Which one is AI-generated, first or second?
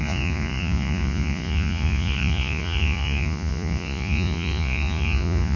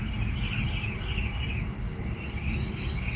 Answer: first